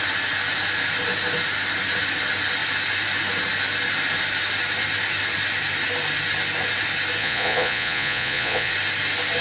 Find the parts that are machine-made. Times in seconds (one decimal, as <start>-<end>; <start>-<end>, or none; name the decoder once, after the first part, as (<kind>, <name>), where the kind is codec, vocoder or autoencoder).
7.2-8.7 (vocoder, Vocos)